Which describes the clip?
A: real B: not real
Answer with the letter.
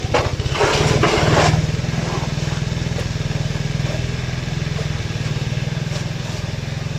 A